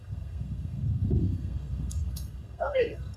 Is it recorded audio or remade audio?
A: remade